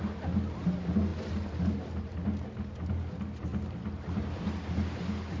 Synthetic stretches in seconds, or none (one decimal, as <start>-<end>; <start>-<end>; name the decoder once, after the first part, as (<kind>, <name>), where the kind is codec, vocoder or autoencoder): none